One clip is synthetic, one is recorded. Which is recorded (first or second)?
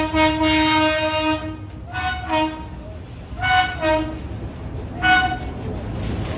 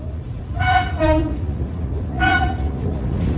first